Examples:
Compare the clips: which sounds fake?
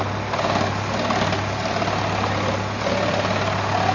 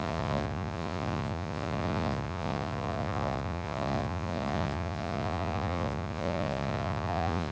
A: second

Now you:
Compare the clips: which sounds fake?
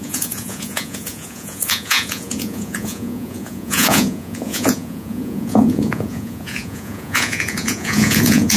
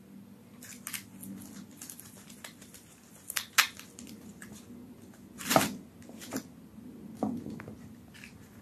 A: first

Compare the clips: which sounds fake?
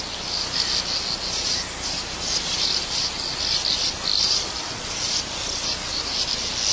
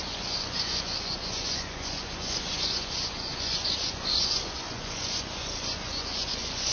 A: second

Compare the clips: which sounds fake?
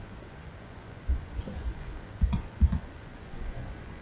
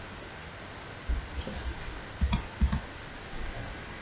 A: first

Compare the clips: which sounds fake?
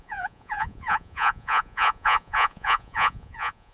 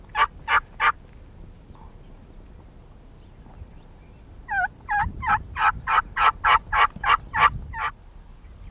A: first